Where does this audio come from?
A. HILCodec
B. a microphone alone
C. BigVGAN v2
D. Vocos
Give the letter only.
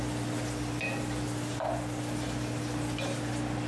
B